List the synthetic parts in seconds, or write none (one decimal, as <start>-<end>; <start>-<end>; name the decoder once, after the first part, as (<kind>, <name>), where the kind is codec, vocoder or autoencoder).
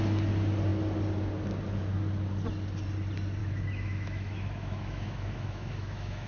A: 3.4-6.3 (autoencoder, DAC-VAE)